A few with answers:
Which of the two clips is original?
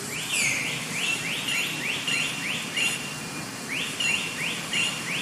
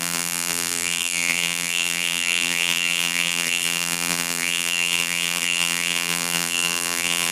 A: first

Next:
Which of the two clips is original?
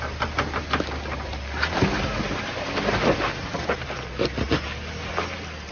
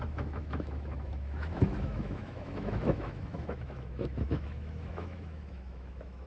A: first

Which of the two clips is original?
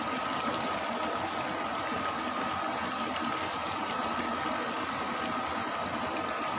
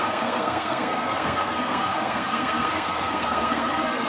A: first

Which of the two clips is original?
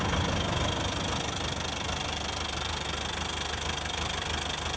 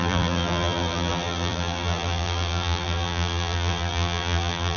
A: first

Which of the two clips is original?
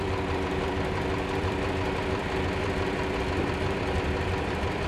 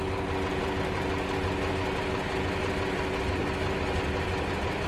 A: second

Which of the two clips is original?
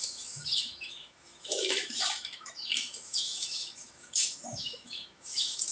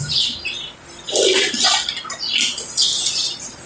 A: second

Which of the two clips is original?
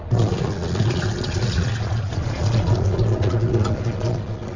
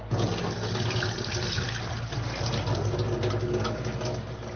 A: second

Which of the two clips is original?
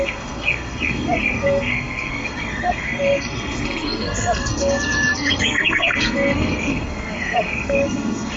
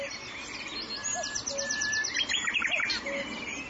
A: second